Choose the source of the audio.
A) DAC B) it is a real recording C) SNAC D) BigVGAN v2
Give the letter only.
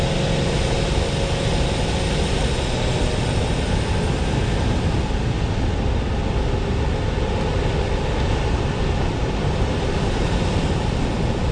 B